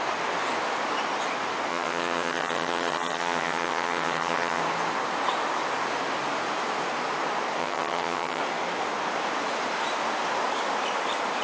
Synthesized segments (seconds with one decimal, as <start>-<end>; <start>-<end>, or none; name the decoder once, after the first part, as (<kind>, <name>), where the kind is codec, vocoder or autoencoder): 1.7-4.6 (vocoder, HiFi-GAN); 7.6-8.4